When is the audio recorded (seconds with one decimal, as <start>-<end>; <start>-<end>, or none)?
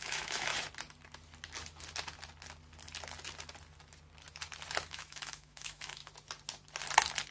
0.5-4.9; 6.0-7.3